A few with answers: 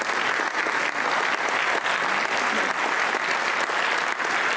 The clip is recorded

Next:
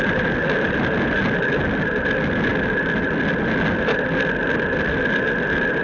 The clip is recorded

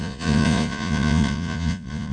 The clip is remade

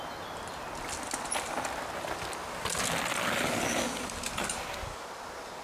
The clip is recorded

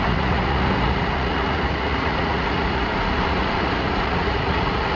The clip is remade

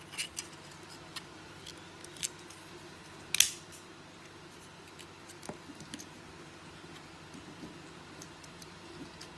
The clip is recorded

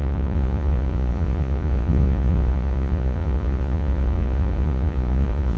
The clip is remade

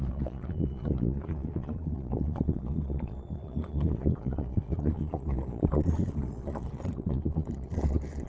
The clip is remade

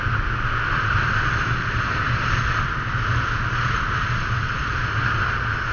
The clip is recorded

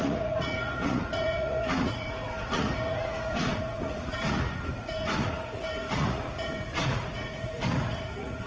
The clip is remade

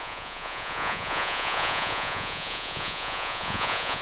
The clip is remade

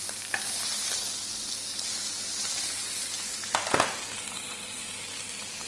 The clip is recorded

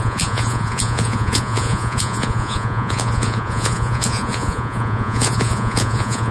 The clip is remade